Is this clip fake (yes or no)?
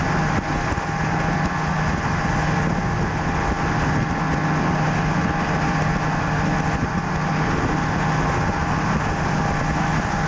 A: no